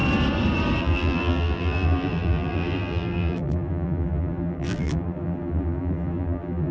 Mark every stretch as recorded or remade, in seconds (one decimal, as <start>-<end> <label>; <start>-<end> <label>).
0.0-0.8 recorded; 0.8-6.7 remade